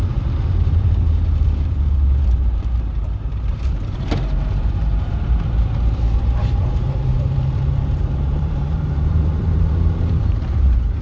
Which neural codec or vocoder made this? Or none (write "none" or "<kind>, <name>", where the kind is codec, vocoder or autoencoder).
vocoder, BigVGAN v2